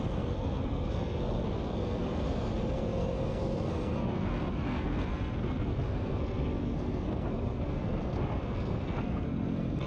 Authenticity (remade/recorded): remade